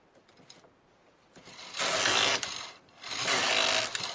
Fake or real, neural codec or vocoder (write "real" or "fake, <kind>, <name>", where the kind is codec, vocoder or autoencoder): real